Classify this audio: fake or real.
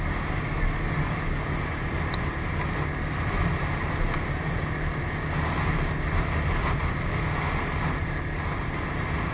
real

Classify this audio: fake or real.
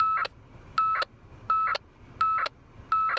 real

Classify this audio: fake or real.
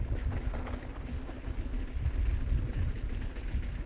real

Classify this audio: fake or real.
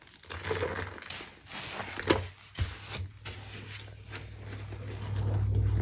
real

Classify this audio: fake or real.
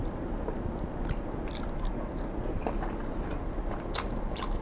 real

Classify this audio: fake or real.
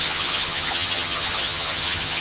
fake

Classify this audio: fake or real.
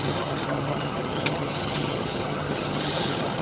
fake